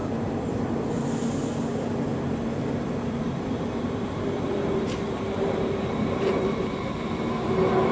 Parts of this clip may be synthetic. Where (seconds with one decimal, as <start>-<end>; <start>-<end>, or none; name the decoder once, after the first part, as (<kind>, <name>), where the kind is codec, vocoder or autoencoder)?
0.0-0.9 (vocoder, BigVGAN v2); 2.1-6.8

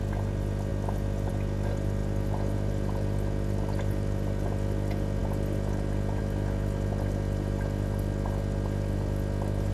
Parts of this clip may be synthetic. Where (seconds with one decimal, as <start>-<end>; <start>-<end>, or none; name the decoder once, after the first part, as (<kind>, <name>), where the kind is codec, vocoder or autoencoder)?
none

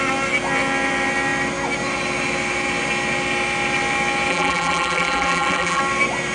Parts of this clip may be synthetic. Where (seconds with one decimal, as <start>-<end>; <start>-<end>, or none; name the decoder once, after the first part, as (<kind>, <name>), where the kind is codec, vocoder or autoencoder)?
4.3-5.8 (vocoder, BigVGAN v2)